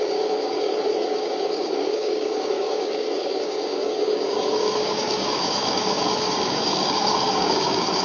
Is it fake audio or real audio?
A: fake